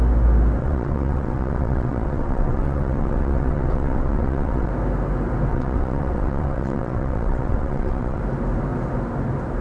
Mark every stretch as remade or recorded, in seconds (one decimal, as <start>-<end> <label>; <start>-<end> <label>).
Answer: 0.0-0.6 recorded; 0.6-4.7 remade; 4.7-5.5 recorded; 5.5-8.2 remade; 8.2-9.6 recorded